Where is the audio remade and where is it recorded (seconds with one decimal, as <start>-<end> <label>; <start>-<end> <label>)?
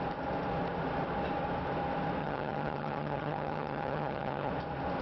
0.0-2.2 recorded; 2.2-4.5 remade; 4.5-5.0 recorded